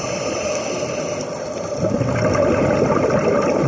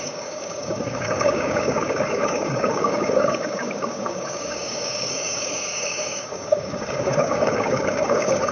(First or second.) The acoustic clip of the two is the first